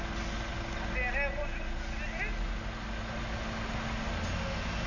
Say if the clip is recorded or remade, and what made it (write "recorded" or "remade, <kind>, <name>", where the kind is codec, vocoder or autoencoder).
recorded